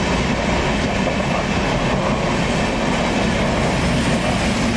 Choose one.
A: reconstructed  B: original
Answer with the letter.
B